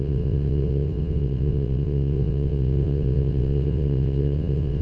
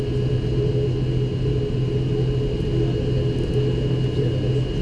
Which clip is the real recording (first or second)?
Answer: second